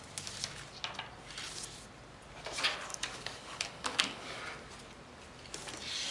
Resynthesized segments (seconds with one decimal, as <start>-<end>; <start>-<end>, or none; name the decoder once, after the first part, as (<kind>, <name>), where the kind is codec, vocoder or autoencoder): 2.9-4.4 (codec, DAC)